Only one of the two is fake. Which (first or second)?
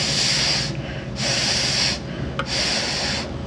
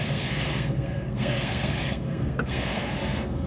second